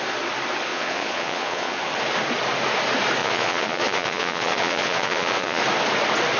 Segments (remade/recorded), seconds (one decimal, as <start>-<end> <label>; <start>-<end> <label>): 0.0-0.7 recorded; 0.7-1.8 remade; 1.8-3.2 recorded; 3.2-5.6 remade; 5.6-6.4 recorded